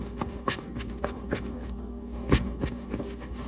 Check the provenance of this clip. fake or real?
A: fake